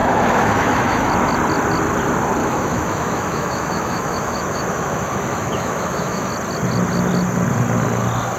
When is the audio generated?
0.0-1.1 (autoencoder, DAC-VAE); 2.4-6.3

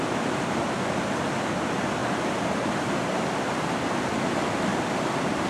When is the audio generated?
2.0-3.2 (vocoder, BigVGAN v2); 4.7-5.5